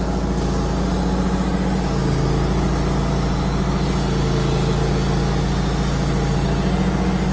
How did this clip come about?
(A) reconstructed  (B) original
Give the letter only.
B